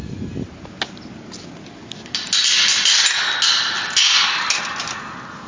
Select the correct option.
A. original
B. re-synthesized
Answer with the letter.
A